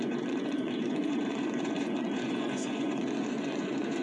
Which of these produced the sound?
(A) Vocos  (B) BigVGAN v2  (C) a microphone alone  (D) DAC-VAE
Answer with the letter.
A